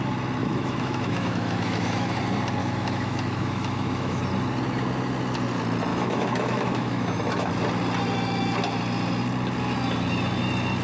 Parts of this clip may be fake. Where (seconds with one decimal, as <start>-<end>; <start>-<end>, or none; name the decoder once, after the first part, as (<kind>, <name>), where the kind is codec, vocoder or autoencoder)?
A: 0.4-2.2 (autoencoder, DAC-VAE); 2.6-4.2; 5.9-7.5